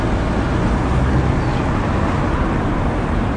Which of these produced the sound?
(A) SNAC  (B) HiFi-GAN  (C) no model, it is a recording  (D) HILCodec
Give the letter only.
C